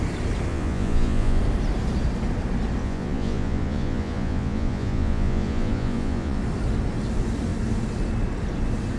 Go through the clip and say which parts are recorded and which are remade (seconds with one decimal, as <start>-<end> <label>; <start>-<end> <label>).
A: 0.0-0.5 recorded; 0.5-1.4 remade; 1.4-2.8 recorded; 2.8-6.4 remade; 6.4-9.0 recorded